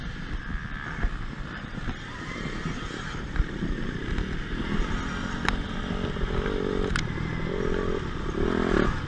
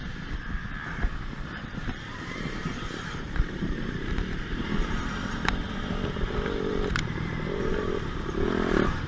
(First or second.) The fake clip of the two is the second